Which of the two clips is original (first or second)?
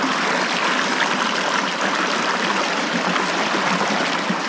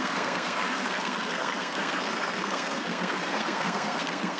first